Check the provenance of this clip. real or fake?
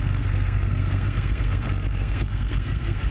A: fake